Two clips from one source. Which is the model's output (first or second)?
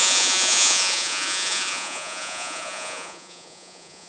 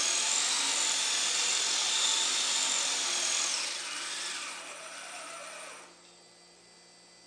first